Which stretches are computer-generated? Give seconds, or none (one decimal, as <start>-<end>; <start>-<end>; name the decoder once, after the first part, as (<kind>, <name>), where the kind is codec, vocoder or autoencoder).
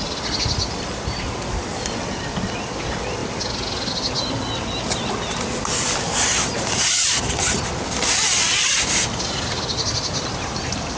none